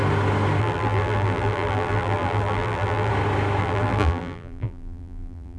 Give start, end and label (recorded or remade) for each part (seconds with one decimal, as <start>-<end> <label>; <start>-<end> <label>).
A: 0.0-0.6 recorded; 0.6-3.1 remade; 3.1-3.6 recorded; 3.6-5.6 remade